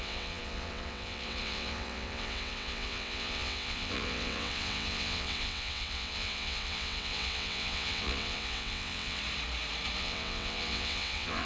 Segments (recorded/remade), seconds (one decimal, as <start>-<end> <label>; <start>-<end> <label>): 0.0-9.2 remade; 9.2-10.0 recorded; 10.0-11.4 remade